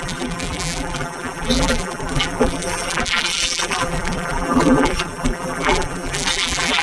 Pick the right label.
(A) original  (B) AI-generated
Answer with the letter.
B